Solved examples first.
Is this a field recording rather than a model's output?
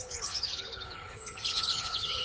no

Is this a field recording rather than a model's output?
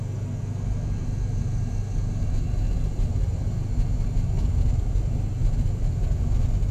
yes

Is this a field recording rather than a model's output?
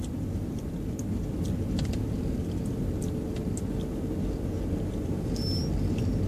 yes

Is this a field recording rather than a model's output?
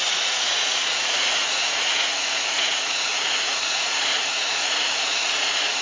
no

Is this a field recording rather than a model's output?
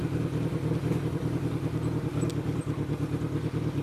yes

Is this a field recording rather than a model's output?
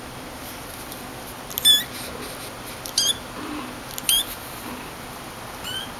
yes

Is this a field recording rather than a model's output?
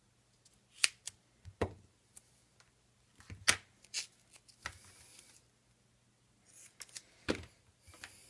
yes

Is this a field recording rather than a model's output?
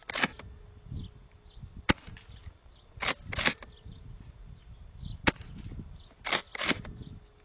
yes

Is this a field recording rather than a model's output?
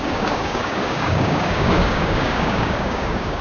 no